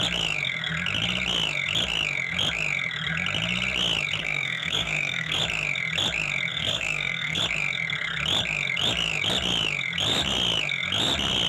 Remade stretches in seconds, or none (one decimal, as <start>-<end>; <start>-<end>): 4.2-5.4; 6.5-7.4